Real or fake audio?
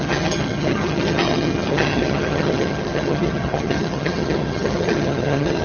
fake